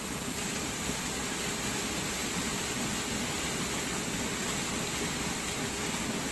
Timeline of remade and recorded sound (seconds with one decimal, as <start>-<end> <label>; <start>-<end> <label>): 0.0-0.8 remade; 0.8-2.2 recorded; 2.2-2.7 remade; 2.7-6.3 recorded